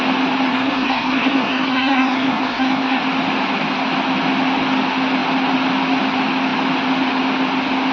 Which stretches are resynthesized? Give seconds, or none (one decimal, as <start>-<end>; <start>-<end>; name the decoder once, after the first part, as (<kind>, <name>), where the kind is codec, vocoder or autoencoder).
0.5-3.0 (codec, SNAC)

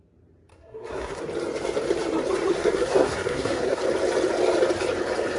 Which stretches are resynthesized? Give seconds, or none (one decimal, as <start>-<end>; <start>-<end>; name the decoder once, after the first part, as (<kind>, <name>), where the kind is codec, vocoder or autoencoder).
0.5-1.2 (codec, SNAC); 2.5-3.8

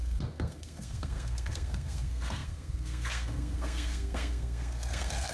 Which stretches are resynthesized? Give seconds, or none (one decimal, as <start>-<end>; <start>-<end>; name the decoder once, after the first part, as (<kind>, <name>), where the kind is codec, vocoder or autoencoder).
0.0-5.3 (codec, SNAC)

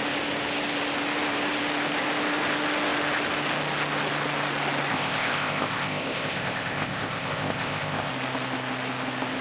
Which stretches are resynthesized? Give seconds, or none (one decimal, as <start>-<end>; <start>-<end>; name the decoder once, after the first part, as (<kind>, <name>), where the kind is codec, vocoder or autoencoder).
4.9-8.1 (codec, ZipCodec)

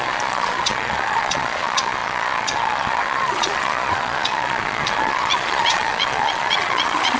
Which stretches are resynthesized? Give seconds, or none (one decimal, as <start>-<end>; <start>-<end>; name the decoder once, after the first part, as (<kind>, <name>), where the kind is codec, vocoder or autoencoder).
0.0-7.2 (vocoder, Vocos)

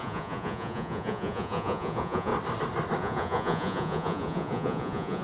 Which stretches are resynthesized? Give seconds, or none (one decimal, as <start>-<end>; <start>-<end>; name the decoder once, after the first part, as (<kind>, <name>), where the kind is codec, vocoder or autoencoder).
0.0-2.3 (vocoder, Vocos); 3.0-5.2